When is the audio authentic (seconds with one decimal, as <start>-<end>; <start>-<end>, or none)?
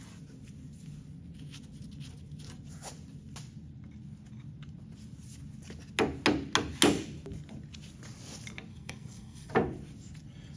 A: 0.0-8.7; 9.5-10.6